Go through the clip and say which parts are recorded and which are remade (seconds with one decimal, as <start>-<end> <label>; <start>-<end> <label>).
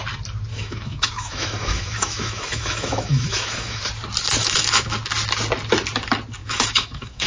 0.0-0.5 recorded; 0.5-3.8 remade; 3.8-4.4 recorded; 4.4-4.9 remade; 4.9-6.4 recorded; 6.4-7.3 remade